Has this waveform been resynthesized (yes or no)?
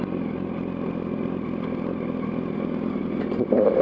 no